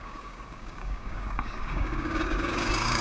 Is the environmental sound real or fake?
fake